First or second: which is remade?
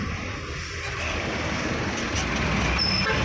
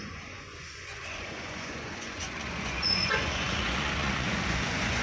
second